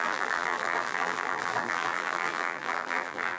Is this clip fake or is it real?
fake